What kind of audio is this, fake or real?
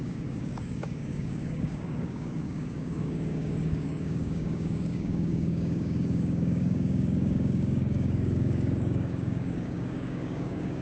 fake